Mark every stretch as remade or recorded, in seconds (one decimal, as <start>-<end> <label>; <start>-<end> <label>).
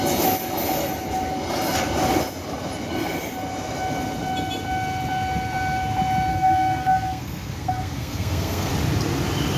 0.0-6.3 recorded; 6.3-8.7 remade; 8.7-9.6 recorded